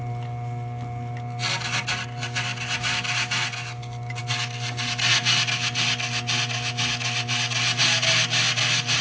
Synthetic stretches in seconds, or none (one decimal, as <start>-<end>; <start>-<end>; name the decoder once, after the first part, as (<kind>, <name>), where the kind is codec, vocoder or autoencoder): none